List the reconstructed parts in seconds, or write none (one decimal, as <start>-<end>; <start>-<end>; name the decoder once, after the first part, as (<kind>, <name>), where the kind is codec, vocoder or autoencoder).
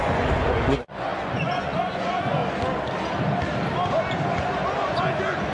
0.0-2.4 (vocoder, Vocos); 4.9-5.5